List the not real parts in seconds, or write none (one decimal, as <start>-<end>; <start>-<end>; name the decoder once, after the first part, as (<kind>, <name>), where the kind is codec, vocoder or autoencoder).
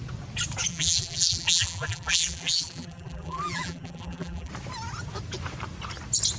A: 0.7-4.5 (vocoder, BigVGAN v2)